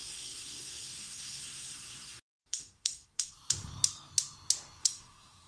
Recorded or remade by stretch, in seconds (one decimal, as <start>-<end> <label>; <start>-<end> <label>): 0.0-3.3 remade; 3.3-4.8 recorded; 4.8-5.5 remade